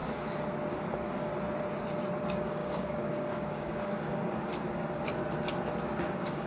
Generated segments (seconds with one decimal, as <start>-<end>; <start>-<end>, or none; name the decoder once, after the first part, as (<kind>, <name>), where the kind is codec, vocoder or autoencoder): 0.9-1.3 (codec, DAC); 2.2-5.2; 6.0-6.5